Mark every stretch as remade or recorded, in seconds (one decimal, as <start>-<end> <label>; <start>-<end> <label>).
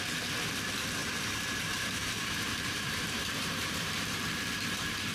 0.0-1.0 recorded; 1.0-4.1 remade; 4.1-5.1 recorded